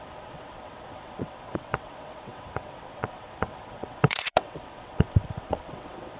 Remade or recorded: remade